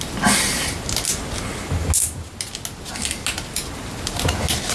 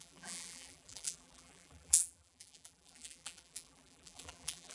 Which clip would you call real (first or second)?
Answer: first